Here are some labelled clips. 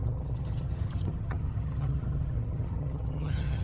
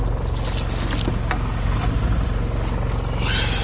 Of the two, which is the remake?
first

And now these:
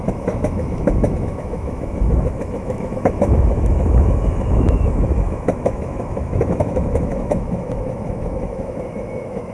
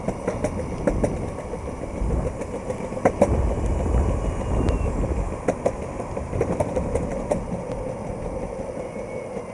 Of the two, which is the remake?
first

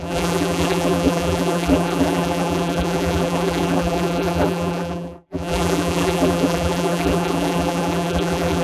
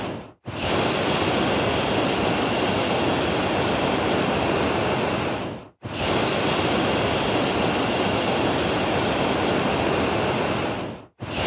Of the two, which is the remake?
first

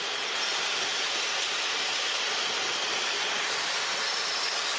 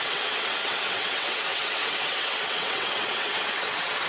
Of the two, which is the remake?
second